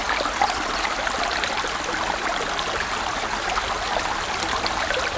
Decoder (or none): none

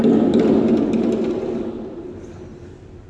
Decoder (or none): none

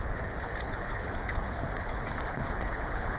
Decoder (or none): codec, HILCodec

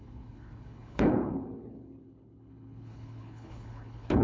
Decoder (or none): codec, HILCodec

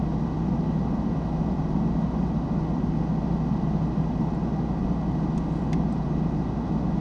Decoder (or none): none